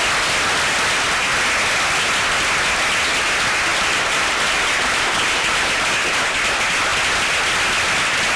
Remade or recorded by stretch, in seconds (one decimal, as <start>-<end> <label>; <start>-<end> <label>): 0.0-3.7 recorded; 3.7-5.7 remade; 5.7-8.4 recorded

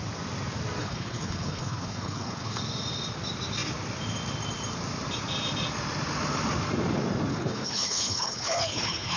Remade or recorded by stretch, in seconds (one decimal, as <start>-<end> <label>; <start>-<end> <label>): 0.0-0.8 recorded; 0.8-2.6 remade; 2.6-7.3 recorded; 7.3-9.2 remade

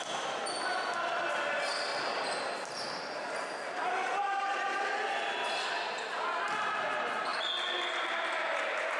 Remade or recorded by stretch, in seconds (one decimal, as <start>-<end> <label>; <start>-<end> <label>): 0.0-9.0 recorded

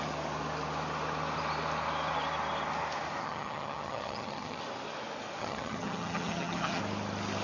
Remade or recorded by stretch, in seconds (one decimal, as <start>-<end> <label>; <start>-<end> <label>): 0.0-3.2 recorded; 3.2-4.6 remade; 4.6-5.4 recorded; 5.4-6.8 remade; 6.8-7.4 recorded

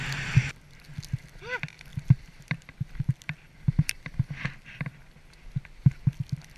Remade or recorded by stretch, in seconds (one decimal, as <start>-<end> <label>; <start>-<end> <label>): 0.0-1.9 recorded; 1.9-3.7 remade; 3.7-6.6 recorded

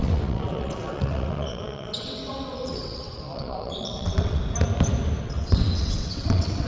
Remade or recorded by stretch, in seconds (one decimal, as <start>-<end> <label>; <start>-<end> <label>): 0.0-4.4 remade; 4.4-5.2 recorded; 5.2-6.7 remade

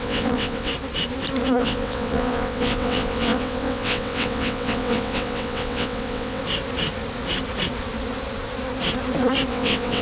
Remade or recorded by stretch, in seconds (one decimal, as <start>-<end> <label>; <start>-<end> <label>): 0.0-0.7 remade; 0.7-1.6 recorded; 1.6-6.4 remade; 6.4-9.5 recorded; 9.5-10.0 remade